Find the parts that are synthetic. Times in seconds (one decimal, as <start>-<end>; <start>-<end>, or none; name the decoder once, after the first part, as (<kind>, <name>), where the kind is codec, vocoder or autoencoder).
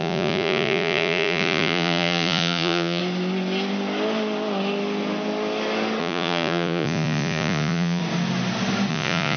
0.0-3.0 (vocoder, Vocos); 6.0-8.0; 8.9-9.4